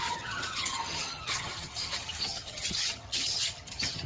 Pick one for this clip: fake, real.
fake